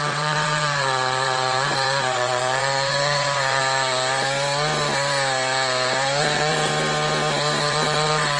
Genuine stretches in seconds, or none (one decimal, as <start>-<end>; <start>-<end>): 3.6-6.2; 6.7-7.6